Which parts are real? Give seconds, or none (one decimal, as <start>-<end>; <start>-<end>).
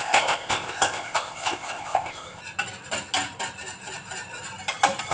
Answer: 2.4-5.1